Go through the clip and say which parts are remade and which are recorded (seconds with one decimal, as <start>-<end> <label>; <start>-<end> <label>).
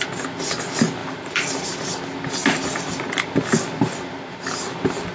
0.0-5.1 recorded